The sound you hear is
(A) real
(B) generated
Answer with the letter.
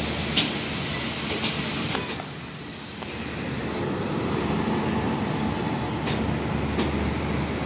A